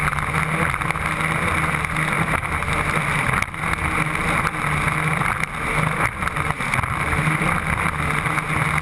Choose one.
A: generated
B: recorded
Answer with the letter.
B